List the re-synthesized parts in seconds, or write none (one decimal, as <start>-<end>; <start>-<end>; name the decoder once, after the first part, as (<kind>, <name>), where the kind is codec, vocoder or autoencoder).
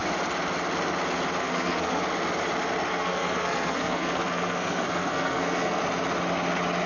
1.4-2.0 (codec, SNAC); 2.9-5.8